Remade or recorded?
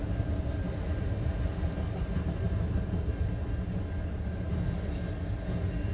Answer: recorded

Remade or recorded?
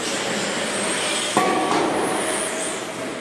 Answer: recorded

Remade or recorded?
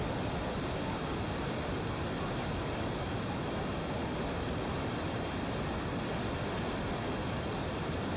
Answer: recorded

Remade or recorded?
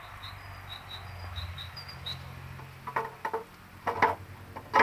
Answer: recorded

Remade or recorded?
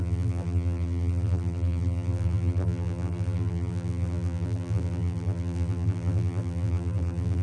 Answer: remade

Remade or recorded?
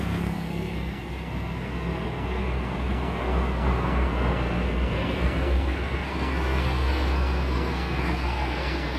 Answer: remade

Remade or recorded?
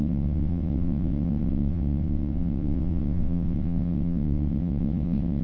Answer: remade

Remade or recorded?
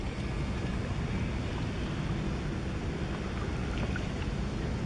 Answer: recorded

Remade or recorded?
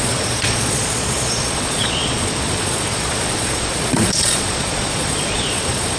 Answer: remade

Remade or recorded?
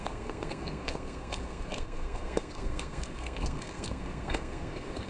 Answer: remade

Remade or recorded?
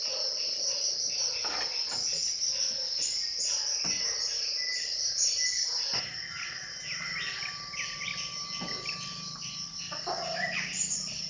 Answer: recorded